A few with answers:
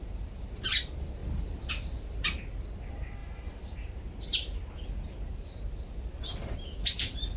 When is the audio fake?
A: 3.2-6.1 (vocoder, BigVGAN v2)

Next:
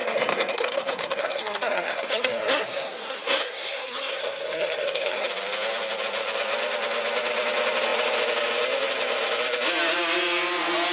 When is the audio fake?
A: 0.0-5.3 (codec, SNAC)

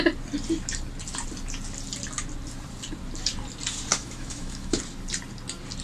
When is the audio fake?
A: 3.9-4.8 (autoencoder, DAC-VAE)

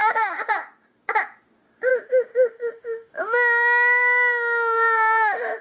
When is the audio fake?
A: 0.0-0.5 (autoencoder, DAC-VAE); 1.9-5.6

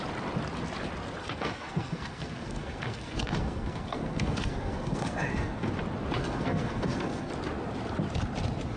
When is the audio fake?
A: 1.2-5.7 (codec, SNAC); 6.2-7.3

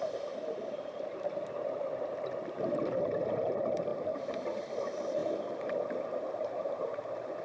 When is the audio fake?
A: 0.0-3.9 (vocoder, BigVGAN v2); 4.6-5.2; 5.9-7.4

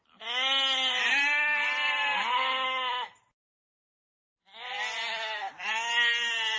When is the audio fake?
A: none